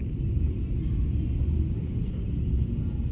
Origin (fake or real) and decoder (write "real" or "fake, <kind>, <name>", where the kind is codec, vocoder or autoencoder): real